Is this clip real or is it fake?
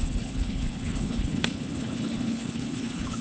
fake